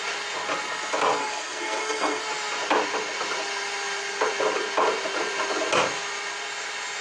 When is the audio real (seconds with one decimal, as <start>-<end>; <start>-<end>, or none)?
0.0-1.2; 2.2-7.0

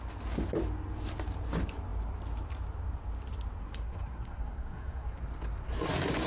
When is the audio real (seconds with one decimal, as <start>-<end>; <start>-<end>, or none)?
0.0-3.6; 5.2-6.3